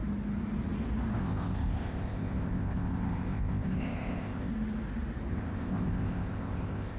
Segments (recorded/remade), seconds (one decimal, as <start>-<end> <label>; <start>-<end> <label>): 0.0-1.2 recorded; 1.2-4.5 remade; 4.5-5.3 recorded; 5.3-7.0 remade

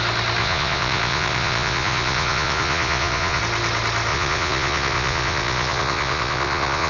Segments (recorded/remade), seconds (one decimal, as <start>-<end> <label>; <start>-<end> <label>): 0.0-0.4 recorded; 0.4-3.4 remade; 3.4-4.1 recorded; 4.1-6.9 remade

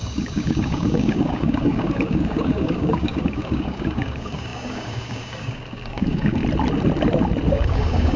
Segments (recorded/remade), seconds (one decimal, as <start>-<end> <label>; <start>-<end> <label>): 0.0-6.4 remade; 6.4-7.5 recorded; 7.5-8.2 remade

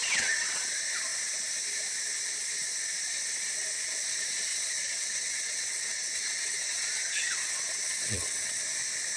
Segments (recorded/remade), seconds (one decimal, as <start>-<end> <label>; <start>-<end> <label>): 0.0-0.6 remade; 0.6-4.5 recorded; 4.5-8.6 remade; 8.6-9.2 recorded

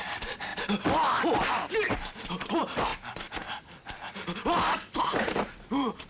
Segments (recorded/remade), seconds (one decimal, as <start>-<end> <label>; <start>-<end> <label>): 0.0-0.5 remade; 0.5-1.1 recorded; 1.1-2.9 remade; 2.9-5.0 recorded; 5.0-6.1 remade

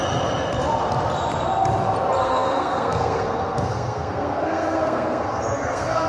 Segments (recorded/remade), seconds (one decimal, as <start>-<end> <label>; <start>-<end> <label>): 0.0-2.2 recorded; 2.2-6.1 remade